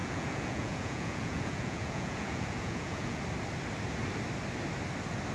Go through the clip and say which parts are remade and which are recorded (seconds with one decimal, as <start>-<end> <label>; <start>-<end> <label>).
0.0-3.2 remade; 3.2-5.3 recorded

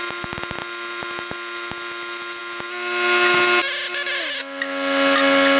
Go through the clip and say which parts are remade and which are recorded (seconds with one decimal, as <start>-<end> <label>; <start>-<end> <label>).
0.0-5.6 recorded

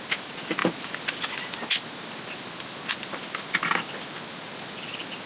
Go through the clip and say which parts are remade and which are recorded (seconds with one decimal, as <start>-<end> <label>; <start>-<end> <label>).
0.0-5.3 recorded

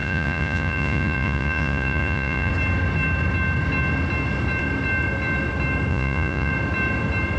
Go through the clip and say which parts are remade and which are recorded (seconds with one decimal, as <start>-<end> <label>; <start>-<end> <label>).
0.0-2.5 remade; 2.5-5.9 recorded; 5.9-6.5 remade; 6.5-7.4 recorded

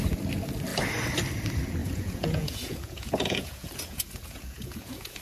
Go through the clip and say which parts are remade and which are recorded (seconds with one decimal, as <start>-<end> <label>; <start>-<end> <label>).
0.0-1.8 recorded; 1.8-5.2 remade

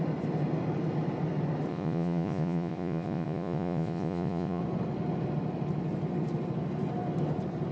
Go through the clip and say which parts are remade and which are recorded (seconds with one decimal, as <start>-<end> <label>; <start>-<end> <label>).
0.0-1.7 recorded; 1.7-4.6 remade; 4.6-7.7 recorded

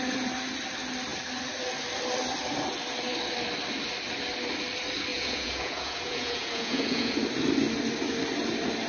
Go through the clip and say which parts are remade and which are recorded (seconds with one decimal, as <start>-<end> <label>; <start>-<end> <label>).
0.0-5.1 recorded; 5.1-7.1 remade; 7.1-8.9 recorded